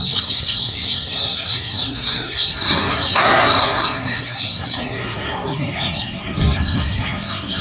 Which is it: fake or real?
fake